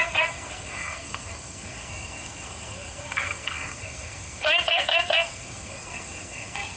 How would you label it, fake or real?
fake